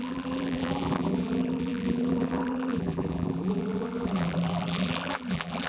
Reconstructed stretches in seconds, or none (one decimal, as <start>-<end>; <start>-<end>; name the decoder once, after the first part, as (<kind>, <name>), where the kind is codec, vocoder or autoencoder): 0.0-5.7 (vocoder, BigVGAN v2)